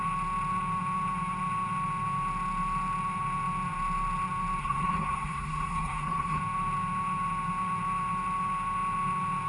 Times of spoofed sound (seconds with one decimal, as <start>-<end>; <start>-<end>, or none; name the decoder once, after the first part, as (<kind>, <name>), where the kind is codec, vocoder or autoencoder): 4.6-6.4 (codec, SNAC)